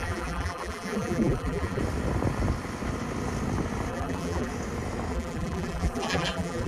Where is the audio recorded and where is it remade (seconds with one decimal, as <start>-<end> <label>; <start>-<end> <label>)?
0.0-1.8 remade; 1.8-3.9 recorded; 3.9-4.5 remade; 4.5-5.1 recorded; 5.1-6.7 remade